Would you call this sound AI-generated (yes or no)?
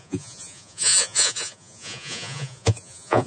yes